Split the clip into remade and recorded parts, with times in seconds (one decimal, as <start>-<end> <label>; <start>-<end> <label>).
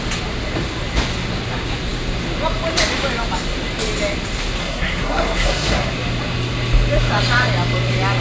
0.0-4.6 recorded; 4.6-5.9 remade; 5.9-8.2 recorded